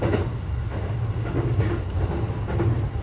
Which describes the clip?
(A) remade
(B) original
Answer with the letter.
B